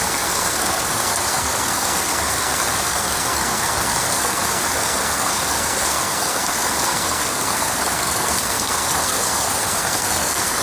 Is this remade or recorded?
remade